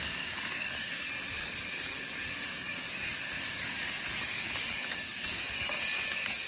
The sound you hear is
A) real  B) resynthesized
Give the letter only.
B